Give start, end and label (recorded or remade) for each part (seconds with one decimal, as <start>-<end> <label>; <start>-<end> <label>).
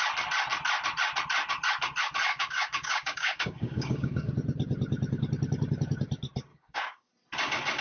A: 0.0-2.3 recorded; 2.3-4.3 remade; 4.3-6.5 recorded; 6.5-7.1 remade; 7.1-7.8 recorded